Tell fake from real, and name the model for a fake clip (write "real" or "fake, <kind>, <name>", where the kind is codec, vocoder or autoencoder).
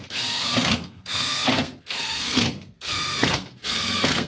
fake, codec, SNAC